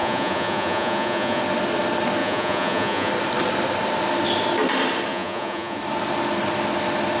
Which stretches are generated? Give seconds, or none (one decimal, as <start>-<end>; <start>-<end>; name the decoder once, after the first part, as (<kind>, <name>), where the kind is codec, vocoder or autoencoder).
0.0-1.4 (vocoder, Vocos); 2.2-3.1; 5.1-5.8